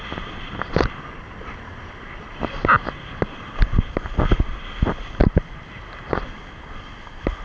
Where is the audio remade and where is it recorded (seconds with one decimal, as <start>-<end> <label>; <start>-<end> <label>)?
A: 0.0-7.4 recorded